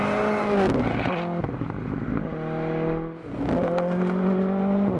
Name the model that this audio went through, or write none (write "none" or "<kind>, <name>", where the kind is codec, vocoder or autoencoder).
none